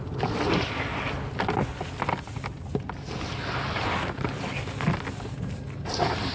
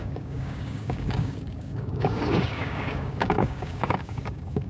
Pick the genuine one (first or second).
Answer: first